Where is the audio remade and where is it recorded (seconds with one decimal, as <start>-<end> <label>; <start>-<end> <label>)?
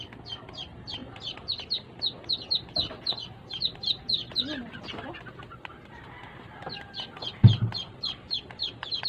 0.0-9.1 recorded